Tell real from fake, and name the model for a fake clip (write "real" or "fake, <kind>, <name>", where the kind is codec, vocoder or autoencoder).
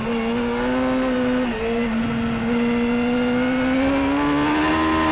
real